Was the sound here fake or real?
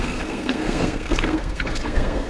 fake